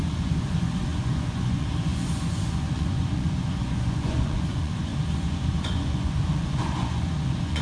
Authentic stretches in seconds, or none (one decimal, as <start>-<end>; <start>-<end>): none